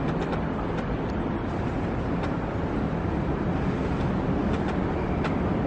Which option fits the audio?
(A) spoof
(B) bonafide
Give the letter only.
B